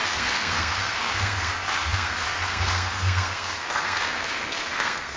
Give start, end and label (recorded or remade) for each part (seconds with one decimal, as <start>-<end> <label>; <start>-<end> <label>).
0.0-5.2 remade